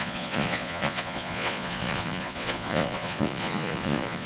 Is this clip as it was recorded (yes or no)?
no